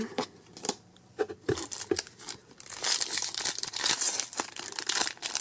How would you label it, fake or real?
fake